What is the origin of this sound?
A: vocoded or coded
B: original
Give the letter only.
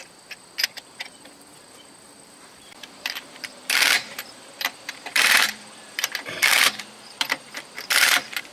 A